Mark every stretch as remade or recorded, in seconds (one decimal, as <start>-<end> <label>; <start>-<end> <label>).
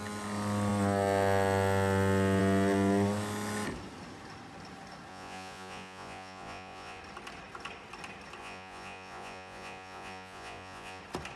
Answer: 0.0-5.1 recorded; 5.1-7.0 remade; 7.0-8.4 recorded; 8.4-11.0 remade; 11.0-11.4 recorded